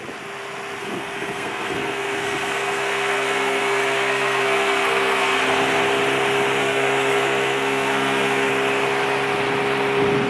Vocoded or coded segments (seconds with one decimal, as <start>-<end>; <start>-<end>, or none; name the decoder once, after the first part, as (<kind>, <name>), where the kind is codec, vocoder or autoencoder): 0.8-5.4 (codec, SNAC); 6.6-8.5